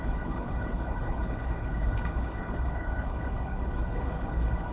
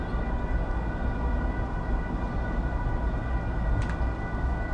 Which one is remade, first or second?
first